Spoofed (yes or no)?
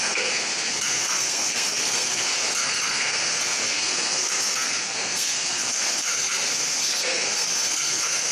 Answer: yes